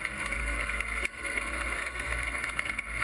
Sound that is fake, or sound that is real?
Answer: fake